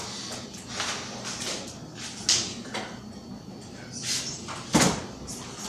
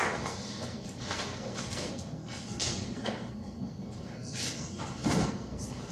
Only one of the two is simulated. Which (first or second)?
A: second